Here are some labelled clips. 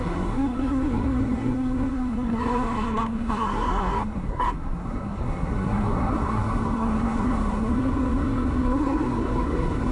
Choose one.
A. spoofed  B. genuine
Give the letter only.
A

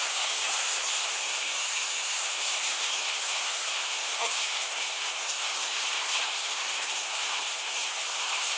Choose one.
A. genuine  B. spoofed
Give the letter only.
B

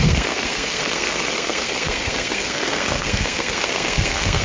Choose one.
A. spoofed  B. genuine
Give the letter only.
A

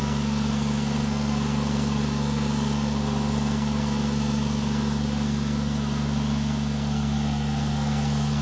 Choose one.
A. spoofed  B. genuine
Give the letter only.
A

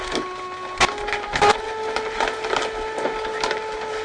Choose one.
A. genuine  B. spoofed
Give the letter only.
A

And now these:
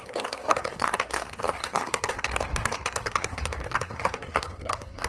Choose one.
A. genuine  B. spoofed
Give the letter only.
B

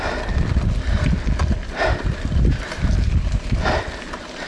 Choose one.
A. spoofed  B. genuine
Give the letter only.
B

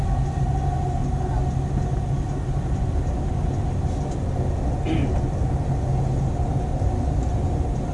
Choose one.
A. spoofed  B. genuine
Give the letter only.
B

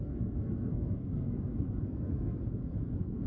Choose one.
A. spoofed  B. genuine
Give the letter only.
A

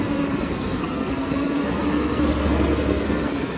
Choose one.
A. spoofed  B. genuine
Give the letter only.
A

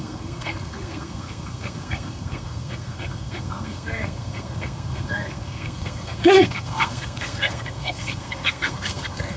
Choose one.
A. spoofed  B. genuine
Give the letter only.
A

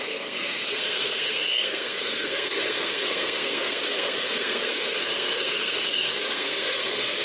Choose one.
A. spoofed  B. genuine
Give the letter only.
A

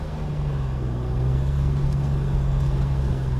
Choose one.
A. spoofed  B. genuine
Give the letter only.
A